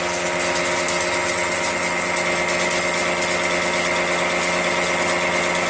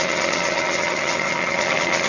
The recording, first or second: first